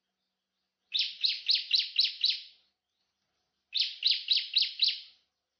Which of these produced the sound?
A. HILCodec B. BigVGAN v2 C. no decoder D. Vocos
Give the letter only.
C